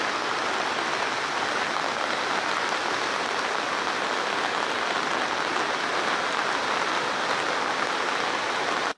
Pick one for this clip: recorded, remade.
recorded